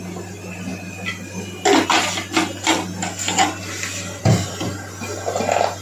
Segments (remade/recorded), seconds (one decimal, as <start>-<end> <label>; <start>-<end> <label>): 0.0-5.8 recorded